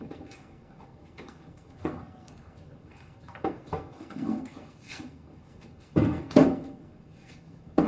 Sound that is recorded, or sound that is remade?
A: remade